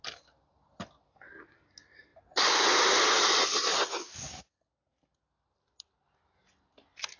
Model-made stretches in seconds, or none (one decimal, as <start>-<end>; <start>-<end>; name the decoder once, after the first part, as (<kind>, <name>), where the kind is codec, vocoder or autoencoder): none